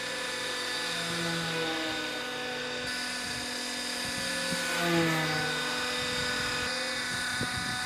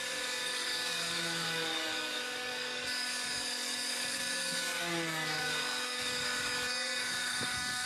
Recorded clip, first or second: first